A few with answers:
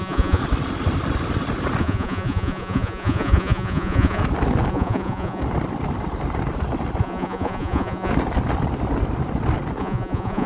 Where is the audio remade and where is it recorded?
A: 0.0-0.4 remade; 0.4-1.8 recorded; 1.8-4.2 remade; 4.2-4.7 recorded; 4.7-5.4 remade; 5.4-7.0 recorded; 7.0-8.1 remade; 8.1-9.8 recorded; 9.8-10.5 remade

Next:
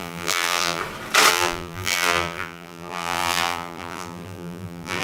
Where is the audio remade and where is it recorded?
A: 0.0-0.8 remade; 0.8-1.3 recorded; 1.3-5.0 remade

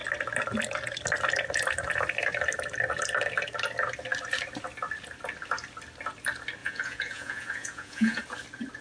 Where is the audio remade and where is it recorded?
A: 0.0-6.6 recorded; 6.6-8.2 remade; 8.2-8.8 recorded

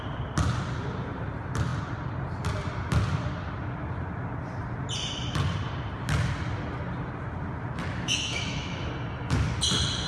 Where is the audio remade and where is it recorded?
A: 0.0-7.9 recorded; 7.9-8.9 remade; 8.9-10.1 recorded

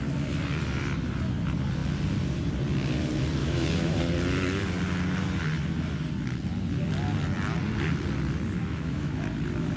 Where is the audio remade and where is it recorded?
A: 0.0-3.4 recorded; 3.4-4.0 remade; 4.0-8.6 recorded; 8.6-9.3 remade; 9.3-9.8 recorded